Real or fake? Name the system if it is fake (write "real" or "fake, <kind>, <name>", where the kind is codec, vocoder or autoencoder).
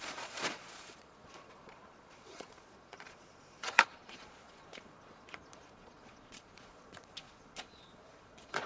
fake, vocoder, Vocos